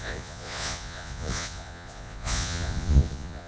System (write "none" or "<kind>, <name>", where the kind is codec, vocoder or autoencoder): vocoder, Vocos